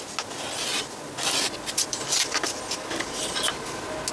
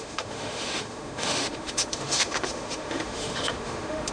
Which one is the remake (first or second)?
second